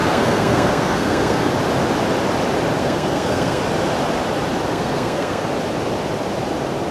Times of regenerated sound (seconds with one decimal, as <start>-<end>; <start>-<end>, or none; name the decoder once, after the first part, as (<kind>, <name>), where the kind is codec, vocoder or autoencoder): 0.0-1.5 (codec, SNAC); 2.8-3.6; 4.7-5.5